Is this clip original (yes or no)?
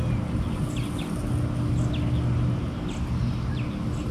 yes